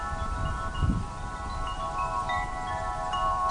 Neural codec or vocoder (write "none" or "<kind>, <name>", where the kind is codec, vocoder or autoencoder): vocoder, BigVGAN v2